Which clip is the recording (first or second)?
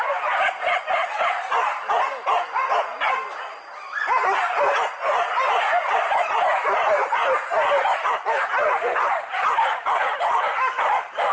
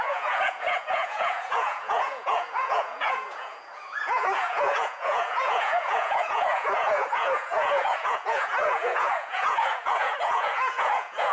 first